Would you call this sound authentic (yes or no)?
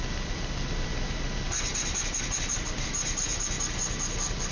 yes